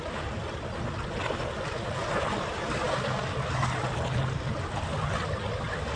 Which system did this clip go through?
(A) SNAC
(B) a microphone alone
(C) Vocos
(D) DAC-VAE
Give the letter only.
B